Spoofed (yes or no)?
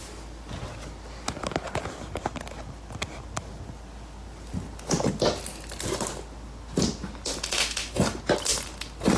no